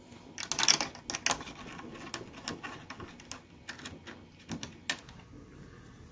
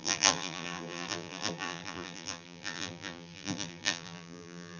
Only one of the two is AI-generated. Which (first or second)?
second